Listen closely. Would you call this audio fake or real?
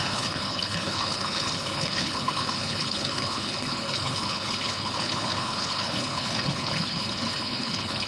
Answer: fake